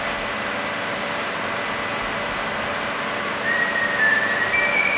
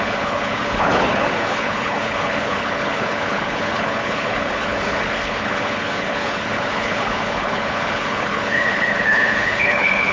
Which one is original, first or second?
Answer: first